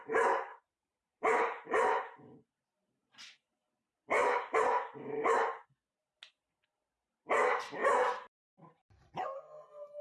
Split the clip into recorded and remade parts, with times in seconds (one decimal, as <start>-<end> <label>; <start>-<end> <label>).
0.0-0.5 recorded; 0.5-2.5 remade; 2.5-4.2 recorded; 4.2-5.4 remade; 5.4-7.8 recorded; 7.8-9.1 remade; 9.1-10.0 recorded

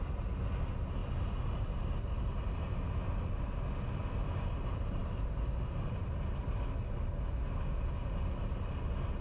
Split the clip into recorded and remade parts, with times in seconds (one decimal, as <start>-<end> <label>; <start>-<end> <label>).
0.0-9.2 recorded